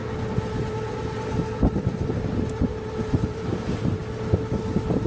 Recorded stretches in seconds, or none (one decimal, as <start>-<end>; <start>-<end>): 0.0-3.1; 4.0-5.1